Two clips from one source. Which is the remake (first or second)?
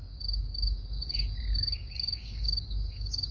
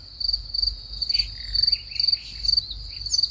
first